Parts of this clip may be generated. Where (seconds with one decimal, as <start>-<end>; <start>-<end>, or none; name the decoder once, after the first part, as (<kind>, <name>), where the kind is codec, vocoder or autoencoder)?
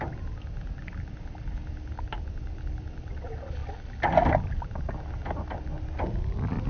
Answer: none